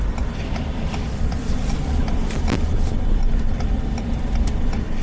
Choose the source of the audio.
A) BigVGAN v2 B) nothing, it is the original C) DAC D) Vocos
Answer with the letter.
B